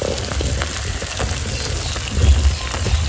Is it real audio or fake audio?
real